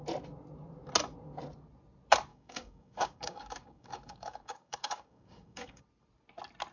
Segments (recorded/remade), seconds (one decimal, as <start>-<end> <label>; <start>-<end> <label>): 0.0-2.3 recorded; 2.3-5.8 remade; 5.8-6.7 recorded